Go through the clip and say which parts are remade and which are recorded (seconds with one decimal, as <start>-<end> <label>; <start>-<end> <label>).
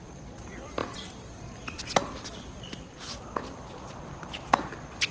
0.0-5.1 remade